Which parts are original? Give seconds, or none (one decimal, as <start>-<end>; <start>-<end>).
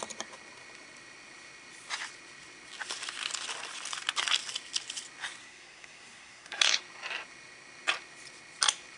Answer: 0.0-5.4; 6.8-9.0